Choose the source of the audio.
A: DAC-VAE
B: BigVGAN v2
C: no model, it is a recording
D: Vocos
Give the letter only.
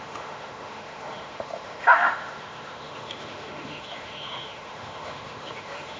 A